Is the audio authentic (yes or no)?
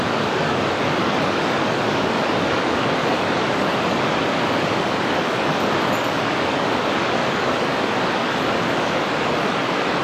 no